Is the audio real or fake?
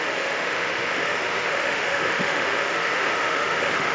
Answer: fake